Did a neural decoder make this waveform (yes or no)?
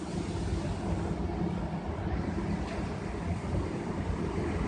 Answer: no